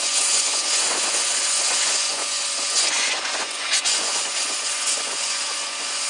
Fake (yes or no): yes